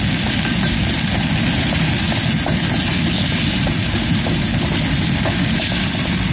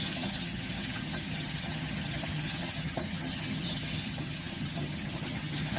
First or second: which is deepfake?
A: second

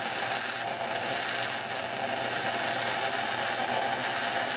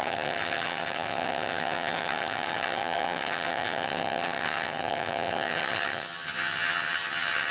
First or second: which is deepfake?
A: second